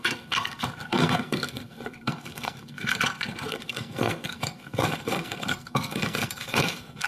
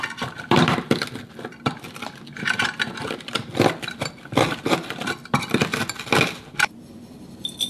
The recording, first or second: second